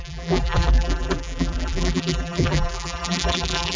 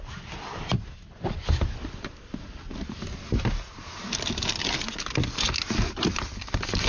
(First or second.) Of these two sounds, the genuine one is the second